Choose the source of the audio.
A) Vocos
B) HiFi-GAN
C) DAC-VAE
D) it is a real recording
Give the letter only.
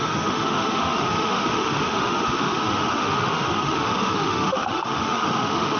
C